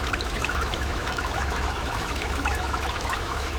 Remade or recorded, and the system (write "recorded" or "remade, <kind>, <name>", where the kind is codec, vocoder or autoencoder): remade, autoencoder, DAC-VAE